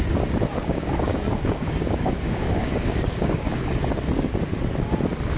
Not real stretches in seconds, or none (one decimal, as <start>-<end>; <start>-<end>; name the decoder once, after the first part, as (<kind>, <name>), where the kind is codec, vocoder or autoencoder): 0.5-3.7 (codec, DAC)